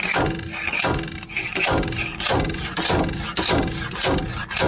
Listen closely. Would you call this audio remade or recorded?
recorded